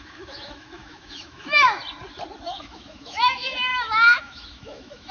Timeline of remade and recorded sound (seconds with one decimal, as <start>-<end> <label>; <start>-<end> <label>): 0.0-1.8 remade; 1.8-2.4 recorded; 2.4-5.1 remade